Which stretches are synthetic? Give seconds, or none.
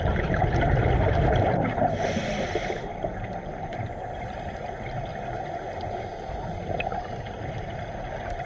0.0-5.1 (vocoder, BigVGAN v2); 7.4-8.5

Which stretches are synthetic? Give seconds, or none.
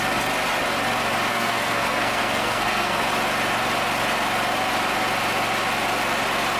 1.3-3.0 (codec, SNAC)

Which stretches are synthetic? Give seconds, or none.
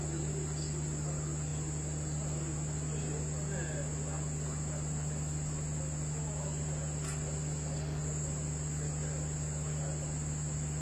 none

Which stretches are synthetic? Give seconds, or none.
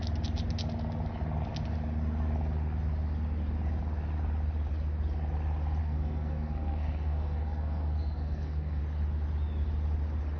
5.8-8.8 (codec, SNAC)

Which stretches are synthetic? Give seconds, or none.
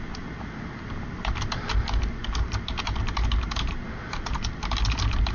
none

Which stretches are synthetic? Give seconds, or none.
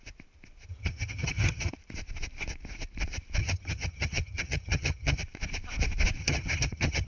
0.7-1.7 (vocoder, HiFi-GAN); 3.4-5.2; 6.2-7.1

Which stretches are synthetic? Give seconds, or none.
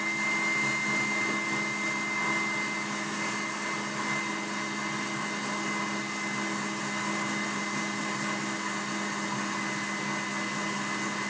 none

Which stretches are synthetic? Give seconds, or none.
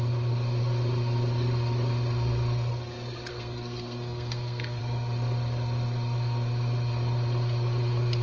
3.3-4.8 (codec, SNAC)